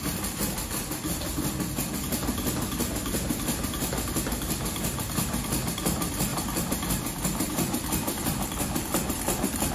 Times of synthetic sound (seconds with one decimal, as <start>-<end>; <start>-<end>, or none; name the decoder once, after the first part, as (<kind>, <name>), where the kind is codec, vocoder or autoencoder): 6.3-9.7 (vocoder, BigVGAN v2)